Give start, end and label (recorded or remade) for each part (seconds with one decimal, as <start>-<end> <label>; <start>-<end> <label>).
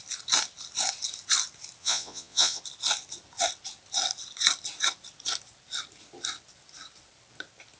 0.0-1.8 recorded; 1.8-2.6 remade; 2.6-7.8 recorded